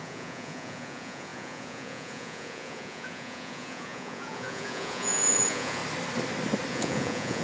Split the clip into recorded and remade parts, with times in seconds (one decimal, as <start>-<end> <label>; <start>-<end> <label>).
0.0-5.8 remade; 5.8-6.7 recorded; 6.7-7.4 remade